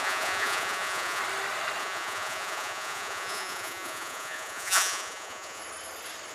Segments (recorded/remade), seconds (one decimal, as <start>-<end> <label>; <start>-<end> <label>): 0.0-1.2 remade; 1.2-1.8 recorded; 1.8-5.6 remade; 5.6-6.3 recorded